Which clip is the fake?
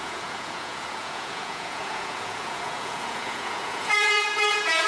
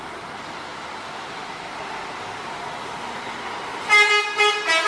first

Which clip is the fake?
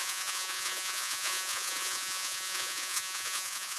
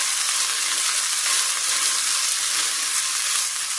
first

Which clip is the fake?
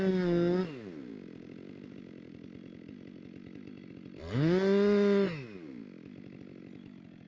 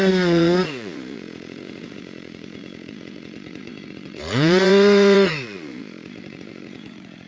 second